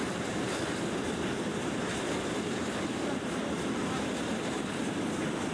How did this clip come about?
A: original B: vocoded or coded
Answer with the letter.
B